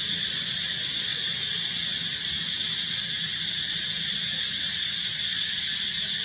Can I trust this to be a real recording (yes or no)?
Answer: yes